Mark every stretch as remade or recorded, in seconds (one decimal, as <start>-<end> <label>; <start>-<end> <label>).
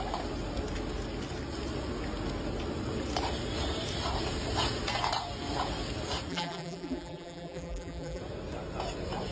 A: 0.0-6.3 recorded; 6.3-8.2 remade; 8.2-9.3 recorded